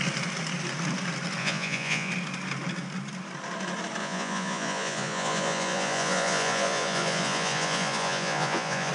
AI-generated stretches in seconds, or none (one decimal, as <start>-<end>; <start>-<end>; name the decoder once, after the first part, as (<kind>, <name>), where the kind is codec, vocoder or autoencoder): 1.4-2.1 (vocoder, Vocos); 4.0-8.9